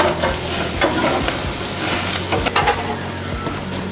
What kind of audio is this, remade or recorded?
recorded